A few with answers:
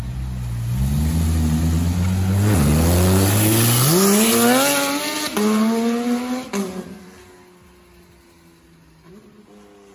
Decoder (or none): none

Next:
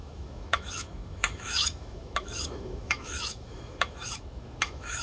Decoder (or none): autoencoder, DAC-VAE